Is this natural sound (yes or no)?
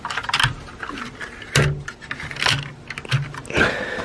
yes